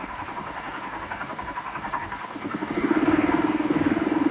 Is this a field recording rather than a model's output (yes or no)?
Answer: no